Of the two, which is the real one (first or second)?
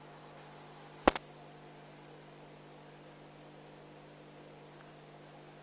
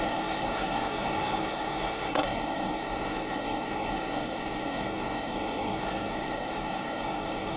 first